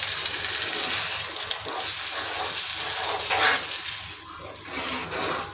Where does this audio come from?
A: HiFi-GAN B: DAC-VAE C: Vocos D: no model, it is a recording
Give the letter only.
D